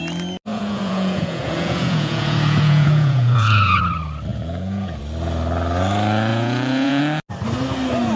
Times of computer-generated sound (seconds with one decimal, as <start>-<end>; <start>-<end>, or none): 0.5-3.8; 4.3-5.0; 6.3-7.0